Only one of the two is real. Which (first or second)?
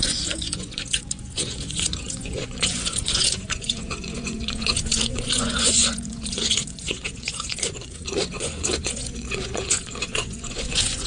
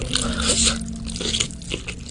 second